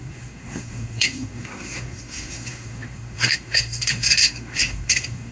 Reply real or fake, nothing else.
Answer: fake